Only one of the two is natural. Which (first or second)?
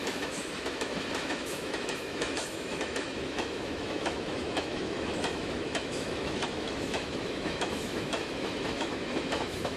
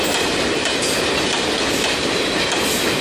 second